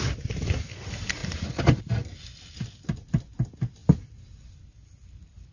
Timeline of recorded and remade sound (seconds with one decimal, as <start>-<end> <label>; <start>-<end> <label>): 0.0-1.2 recorded; 1.2-1.8 remade; 1.8-5.5 recorded